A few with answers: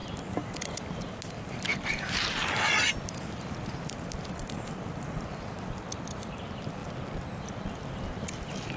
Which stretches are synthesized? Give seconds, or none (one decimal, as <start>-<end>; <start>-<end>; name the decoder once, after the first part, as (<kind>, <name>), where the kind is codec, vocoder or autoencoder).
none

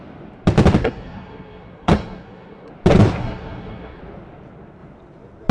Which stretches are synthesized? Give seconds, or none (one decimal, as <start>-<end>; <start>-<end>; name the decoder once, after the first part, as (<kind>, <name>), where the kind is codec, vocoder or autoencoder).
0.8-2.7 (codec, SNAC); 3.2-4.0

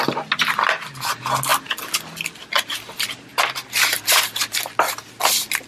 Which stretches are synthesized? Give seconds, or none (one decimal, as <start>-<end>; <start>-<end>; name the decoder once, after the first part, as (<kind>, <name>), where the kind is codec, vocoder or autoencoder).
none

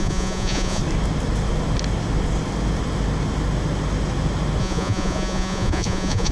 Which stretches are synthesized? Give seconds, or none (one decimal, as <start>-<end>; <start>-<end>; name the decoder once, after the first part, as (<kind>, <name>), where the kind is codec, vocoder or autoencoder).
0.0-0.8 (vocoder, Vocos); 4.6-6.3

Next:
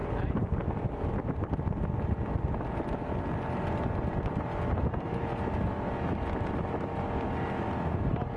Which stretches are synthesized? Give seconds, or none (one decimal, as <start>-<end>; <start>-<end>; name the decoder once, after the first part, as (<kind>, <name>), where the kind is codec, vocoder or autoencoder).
none

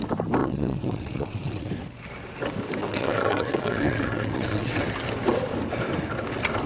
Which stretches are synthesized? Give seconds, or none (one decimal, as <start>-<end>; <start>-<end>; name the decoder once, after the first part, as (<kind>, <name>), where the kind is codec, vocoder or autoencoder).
0.4-1.7 (vocoder, WaveNeXt); 2.8-4.8

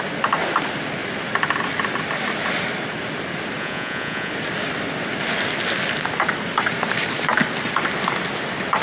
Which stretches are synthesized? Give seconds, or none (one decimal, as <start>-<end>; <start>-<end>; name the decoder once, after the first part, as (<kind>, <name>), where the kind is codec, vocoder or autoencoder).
3.6-4.3 (vocoder, Vocos)

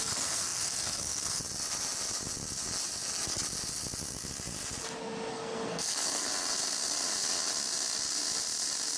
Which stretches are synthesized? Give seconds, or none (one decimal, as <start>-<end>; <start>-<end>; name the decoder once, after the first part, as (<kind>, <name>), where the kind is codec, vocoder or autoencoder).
0.0-1.4 (codec, SNAC); 5.3-6.3